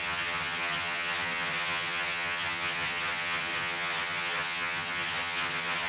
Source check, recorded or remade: remade